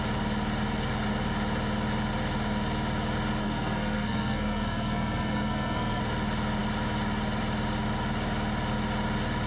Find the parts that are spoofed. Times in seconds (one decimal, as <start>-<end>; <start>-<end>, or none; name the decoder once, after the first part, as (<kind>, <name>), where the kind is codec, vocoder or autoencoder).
3.4-6.0 (codec, SNAC)